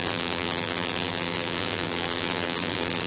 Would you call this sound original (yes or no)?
no